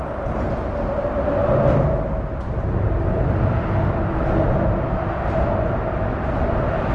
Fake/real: real